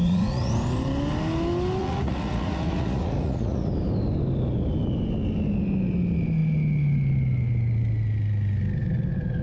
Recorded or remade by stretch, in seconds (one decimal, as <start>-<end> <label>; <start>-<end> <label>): 0.0-0.5 remade; 0.5-1.8 recorded; 1.8-3.7 remade; 3.7-9.4 recorded